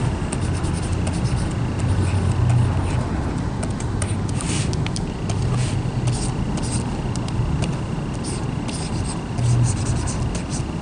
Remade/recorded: recorded